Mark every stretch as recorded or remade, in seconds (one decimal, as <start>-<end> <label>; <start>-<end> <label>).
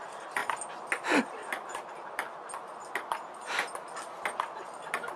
0.0-5.2 recorded